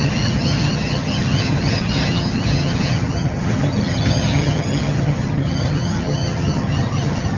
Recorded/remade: remade